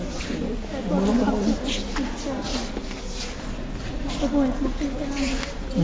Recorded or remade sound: recorded